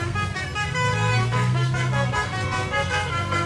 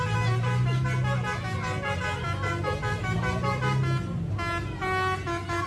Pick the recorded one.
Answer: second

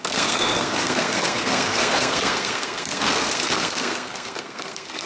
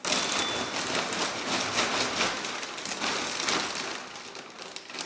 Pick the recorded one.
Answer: second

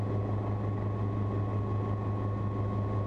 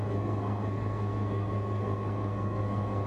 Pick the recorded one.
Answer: first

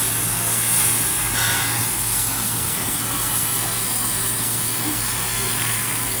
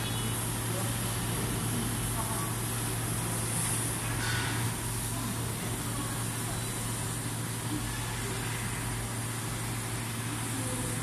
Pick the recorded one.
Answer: second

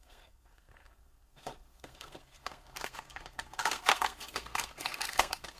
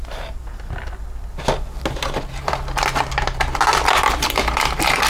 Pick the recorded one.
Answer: second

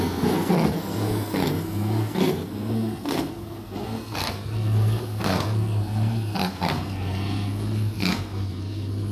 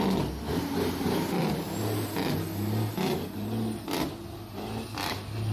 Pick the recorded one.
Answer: second